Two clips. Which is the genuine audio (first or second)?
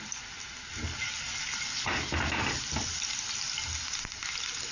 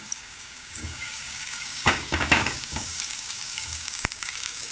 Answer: first